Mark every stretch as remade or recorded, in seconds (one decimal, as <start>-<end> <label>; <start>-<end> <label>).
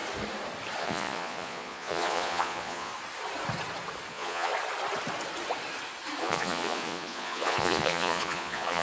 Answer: 0.0-0.8 recorded; 0.8-2.9 remade; 2.9-4.1 recorded; 4.1-4.5 remade; 4.5-6.2 recorded; 6.2-8.8 remade